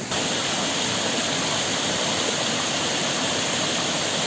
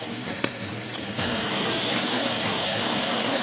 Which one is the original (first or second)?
first